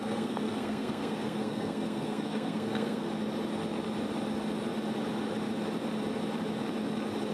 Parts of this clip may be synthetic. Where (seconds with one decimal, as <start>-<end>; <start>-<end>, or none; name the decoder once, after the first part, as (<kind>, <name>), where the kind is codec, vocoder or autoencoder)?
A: 0.0-3.1 (codec, SNAC)